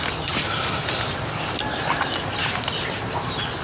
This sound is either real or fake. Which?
real